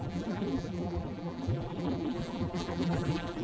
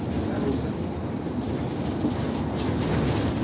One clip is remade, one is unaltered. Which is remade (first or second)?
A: first